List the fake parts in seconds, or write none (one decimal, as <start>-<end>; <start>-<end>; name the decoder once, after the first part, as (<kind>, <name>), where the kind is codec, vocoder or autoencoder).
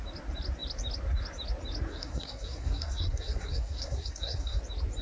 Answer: 1.9-4.6 (codec, SNAC)